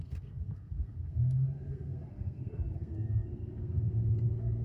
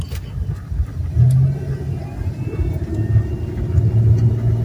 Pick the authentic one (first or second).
second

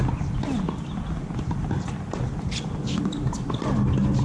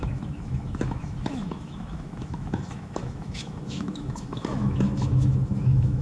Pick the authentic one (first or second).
first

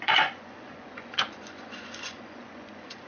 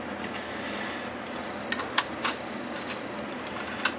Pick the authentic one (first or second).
second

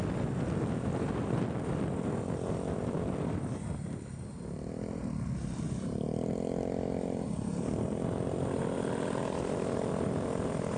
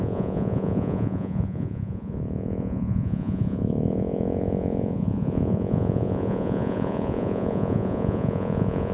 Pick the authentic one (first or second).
first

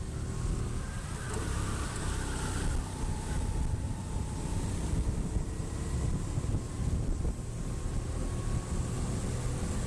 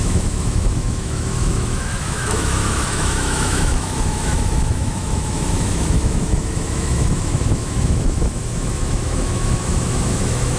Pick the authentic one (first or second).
first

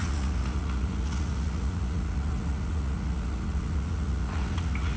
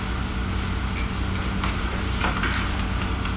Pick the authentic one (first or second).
second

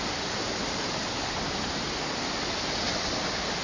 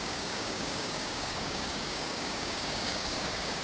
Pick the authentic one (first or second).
first